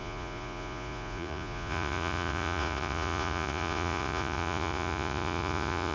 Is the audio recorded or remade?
remade